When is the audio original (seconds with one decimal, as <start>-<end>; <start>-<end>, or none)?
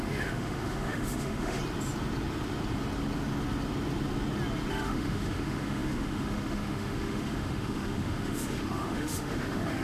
1.6-4.7